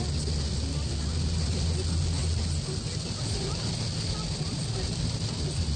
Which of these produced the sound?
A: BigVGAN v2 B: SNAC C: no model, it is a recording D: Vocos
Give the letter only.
C